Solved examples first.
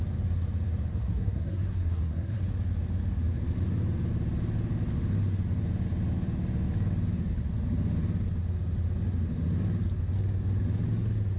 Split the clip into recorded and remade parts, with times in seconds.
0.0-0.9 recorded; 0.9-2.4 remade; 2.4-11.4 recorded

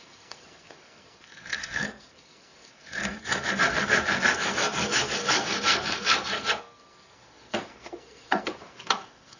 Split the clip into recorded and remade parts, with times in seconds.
0.0-9.4 remade